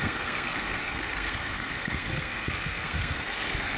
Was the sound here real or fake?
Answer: fake